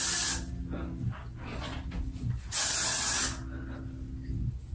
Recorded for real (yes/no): yes